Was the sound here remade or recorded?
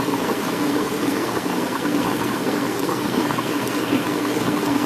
remade